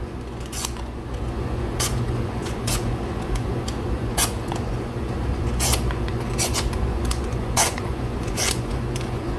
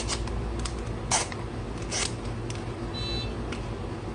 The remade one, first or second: first